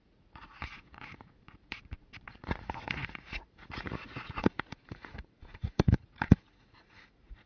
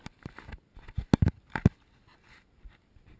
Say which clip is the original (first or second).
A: second